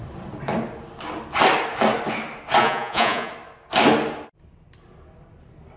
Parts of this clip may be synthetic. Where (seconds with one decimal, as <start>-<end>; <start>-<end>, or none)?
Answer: 2.6-3.3